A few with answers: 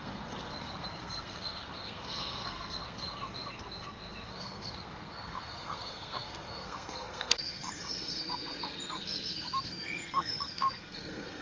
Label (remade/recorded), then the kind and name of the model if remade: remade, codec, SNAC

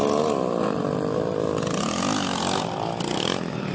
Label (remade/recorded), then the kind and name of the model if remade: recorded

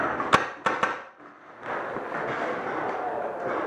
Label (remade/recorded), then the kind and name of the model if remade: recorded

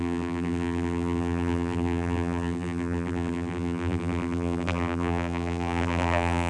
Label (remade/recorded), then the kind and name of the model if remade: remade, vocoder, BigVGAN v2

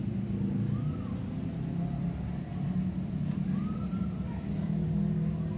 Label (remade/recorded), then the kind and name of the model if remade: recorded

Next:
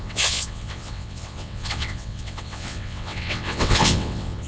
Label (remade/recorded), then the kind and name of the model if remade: remade, vocoder, WaveNeXt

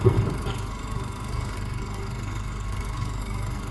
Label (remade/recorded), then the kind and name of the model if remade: remade, codec, SNAC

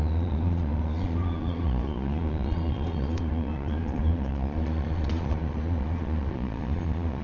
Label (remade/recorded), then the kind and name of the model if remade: remade, vocoder, Vocos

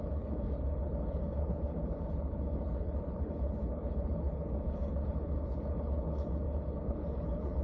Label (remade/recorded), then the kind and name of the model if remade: remade, codec, HILCodec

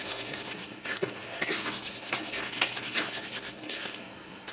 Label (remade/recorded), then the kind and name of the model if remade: remade, codec, SNAC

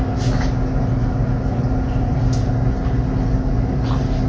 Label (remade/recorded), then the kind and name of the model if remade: recorded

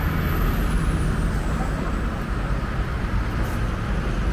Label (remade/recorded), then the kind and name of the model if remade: recorded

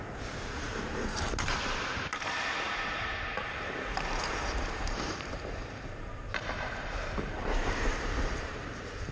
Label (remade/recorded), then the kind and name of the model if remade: remade, vocoder, BigVGAN v2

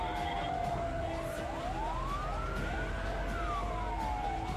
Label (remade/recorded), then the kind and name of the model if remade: recorded